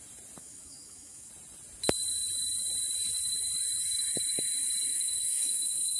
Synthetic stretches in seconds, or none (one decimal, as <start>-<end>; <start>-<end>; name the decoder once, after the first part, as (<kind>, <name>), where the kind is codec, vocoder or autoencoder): 0.4-1.3 (autoencoder, DAC-VAE); 4.9-6.0